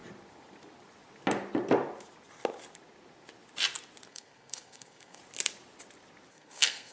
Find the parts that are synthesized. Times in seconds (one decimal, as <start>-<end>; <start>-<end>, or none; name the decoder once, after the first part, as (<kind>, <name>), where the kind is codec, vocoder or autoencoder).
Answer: 4.1-5.2 (codec, SNAC); 6.3-6.9